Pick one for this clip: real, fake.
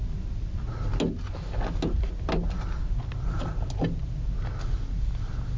real